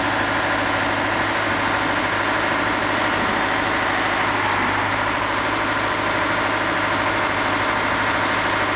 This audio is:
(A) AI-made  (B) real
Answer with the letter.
B